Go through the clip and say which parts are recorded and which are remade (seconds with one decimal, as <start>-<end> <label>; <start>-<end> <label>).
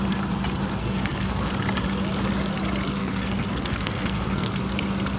0.0-0.8 recorded; 0.8-1.5 remade; 1.5-3.0 recorded; 3.0-4.6 remade; 4.6-5.2 recorded